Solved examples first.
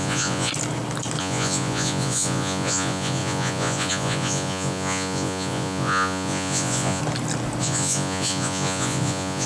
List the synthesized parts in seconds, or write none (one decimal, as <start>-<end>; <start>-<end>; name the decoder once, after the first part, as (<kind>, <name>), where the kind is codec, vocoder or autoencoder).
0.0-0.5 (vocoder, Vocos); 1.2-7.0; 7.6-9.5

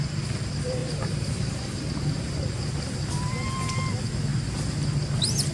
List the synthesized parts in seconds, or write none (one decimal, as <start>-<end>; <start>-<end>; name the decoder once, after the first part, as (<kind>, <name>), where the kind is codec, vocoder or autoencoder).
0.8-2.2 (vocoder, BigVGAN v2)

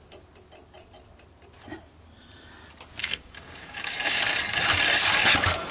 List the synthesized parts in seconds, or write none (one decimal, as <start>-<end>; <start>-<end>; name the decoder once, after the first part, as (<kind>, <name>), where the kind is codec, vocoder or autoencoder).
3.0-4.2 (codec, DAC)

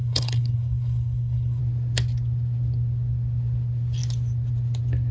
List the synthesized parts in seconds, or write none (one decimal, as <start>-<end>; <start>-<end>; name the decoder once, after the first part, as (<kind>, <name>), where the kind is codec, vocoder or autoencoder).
0.0-1.6 (codec, HILCodec)

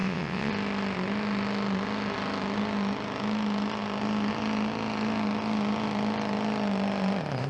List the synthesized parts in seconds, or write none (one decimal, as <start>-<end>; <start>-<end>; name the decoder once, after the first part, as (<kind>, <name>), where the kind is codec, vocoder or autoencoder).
0.0-0.5 (vocoder, WaveNeXt)

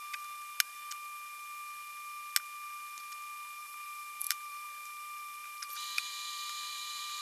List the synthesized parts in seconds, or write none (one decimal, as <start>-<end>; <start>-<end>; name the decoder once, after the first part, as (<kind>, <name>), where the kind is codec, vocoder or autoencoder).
3.6-7.2 (vocoder, BigVGAN v2)

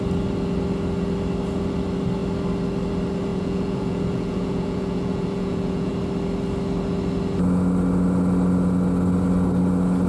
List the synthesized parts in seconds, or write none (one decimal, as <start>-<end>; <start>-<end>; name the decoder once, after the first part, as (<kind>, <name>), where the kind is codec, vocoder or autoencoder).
3.3-5.9 (vocoder, Vocos)